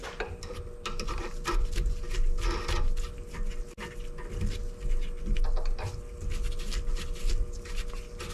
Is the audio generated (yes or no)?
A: no